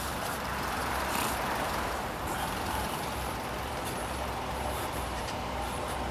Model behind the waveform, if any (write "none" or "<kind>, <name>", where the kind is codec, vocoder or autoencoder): vocoder, BigVGAN v2